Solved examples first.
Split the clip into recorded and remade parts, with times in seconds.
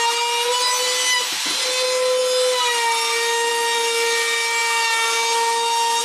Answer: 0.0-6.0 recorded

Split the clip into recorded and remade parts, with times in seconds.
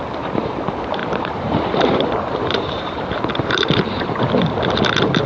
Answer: 0.0-1.0 recorded; 1.0-4.2 remade; 4.2-5.3 recorded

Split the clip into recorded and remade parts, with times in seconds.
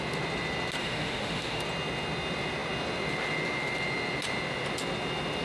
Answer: 0.0-0.8 recorded; 0.8-1.6 remade; 1.6-5.4 recorded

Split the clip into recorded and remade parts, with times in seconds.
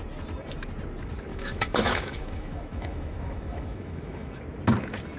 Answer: 0.0-1.3 recorded; 1.3-4.4 remade; 4.4-5.2 recorded